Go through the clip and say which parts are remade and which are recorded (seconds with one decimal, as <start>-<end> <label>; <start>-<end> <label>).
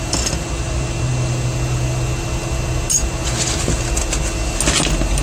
0.0-5.2 recorded